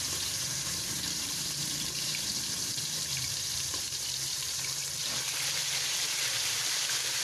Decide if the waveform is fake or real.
fake